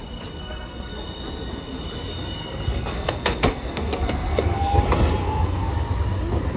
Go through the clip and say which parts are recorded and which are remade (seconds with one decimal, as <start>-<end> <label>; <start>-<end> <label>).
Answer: 0.0-0.4 recorded; 0.4-0.9 remade; 0.9-2.4 recorded; 2.4-4.8 remade; 4.8-5.2 recorded; 5.2-5.7 remade; 5.7-6.6 recorded